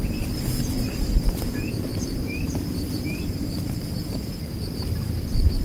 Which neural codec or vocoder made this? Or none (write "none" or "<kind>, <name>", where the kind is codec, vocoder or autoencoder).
vocoder, BigVGAN v2